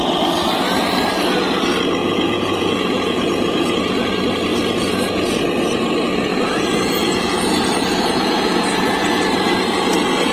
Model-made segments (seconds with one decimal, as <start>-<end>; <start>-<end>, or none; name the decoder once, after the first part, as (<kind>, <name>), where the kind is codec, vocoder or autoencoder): 2.0-4.1 (vocoder, Vocos); 6.3-9.2